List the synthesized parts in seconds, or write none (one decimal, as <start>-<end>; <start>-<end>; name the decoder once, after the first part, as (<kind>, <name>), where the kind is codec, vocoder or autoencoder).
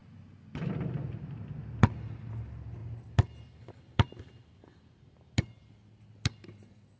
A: none